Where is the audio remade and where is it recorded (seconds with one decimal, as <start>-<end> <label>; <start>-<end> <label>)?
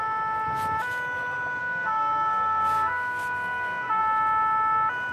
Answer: 0.0-1.6 recorded; 1.6-4.0 remade; 4.0-5.1 recorded